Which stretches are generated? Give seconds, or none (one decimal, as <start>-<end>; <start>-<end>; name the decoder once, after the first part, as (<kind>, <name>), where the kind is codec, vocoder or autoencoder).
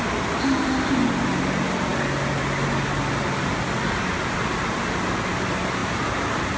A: 5.8-6.6 (vocoder, BigVGAN v2)